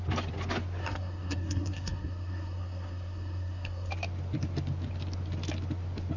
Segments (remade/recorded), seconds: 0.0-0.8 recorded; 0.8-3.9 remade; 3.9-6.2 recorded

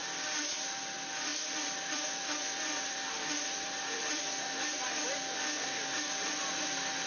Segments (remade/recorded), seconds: 0.0-1.3 recorded; 1.3-4.2 remade; 4.2-7.1 recorded

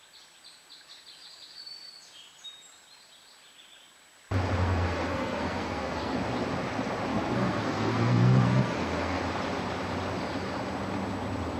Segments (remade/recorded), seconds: 0.0-4.6 recorded; 4.6-6.2 remade; 6.2-7.1 recorded; 7.1-9.2 remade; 9.2-11.6 recorded

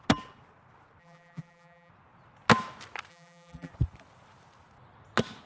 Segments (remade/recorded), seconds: 0.0-1.0 recorded; 1.0-1.9 remade; 1.9-3.1 recorded; 3.1-3.7 remade; 3.7-5.5 recorded

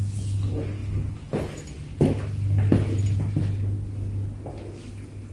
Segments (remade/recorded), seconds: 0.0-5.3 recorded

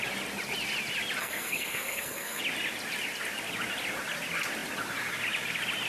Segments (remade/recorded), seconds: 0.0-1.2 recorded; 1.2-2.4 remade; 2.4-5.9 recorded